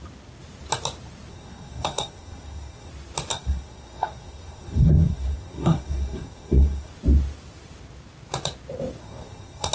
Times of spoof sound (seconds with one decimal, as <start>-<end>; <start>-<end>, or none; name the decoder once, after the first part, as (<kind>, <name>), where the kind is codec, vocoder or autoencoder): 1.3-2.9 (codec, SNAC); 3.3-6.9; 9.0-9.7